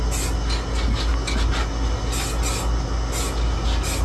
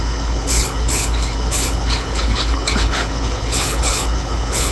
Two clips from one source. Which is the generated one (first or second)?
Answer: second